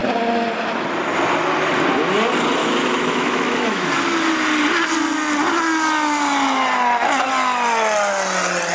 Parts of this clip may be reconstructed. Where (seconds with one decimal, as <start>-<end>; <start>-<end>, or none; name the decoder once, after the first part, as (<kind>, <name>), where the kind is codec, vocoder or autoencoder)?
2.6-3.9 (autoencoder, DAC-VAE)